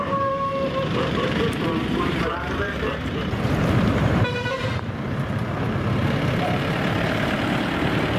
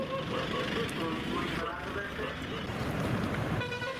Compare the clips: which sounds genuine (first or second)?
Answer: second